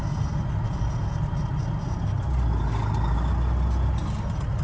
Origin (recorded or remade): recorded